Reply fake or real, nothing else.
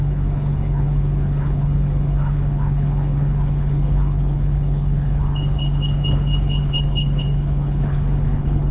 fake